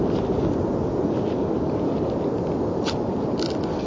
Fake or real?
real